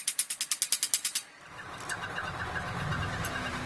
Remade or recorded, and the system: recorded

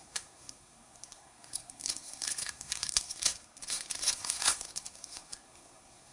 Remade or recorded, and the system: remade, codec, SNAC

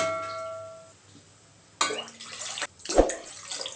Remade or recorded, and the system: recorded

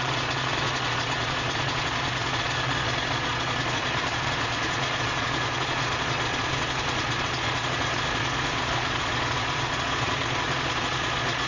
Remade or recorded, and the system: remade, vocoder, Vocos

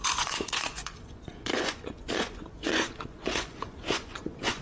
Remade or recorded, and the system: remade, vocoder, Vocos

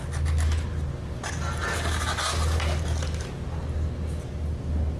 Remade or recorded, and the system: recorded